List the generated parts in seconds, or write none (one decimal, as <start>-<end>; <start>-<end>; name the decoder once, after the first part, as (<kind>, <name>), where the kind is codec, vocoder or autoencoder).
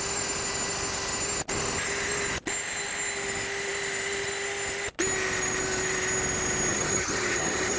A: 6.7-7.8 (vocoder, HiFi-GAN)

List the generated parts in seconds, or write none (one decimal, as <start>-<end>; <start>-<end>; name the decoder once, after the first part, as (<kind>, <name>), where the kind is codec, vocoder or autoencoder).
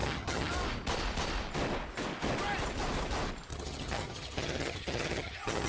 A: 0.0-0.5 (vocoder, HiFi-GAN); 3.5-5.7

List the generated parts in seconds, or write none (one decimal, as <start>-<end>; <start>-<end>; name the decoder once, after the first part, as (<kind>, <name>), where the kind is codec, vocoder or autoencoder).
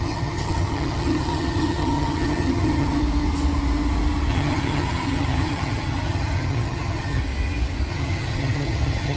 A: 0.0-3.0 (vocoder, HiFi-GAN); 4.3-7.2; 7.9-9.2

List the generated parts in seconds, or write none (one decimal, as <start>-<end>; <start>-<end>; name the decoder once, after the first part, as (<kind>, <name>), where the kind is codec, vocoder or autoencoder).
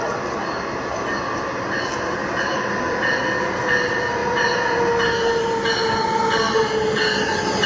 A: none